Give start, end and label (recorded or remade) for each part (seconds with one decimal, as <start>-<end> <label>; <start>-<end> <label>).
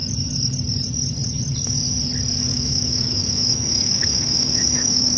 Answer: 0.0-2.5 recorded; 2.5-5.2 remade